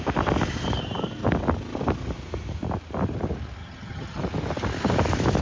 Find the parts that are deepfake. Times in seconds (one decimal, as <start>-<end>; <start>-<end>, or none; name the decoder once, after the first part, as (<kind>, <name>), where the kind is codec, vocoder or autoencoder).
3.6-4.2 (vocoder, HiFi-GAN)